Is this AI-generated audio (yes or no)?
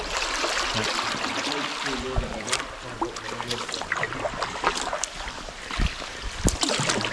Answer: no